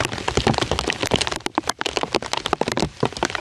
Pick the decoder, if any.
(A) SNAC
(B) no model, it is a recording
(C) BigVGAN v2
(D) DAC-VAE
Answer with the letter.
B